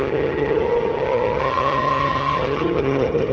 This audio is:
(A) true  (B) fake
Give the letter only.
B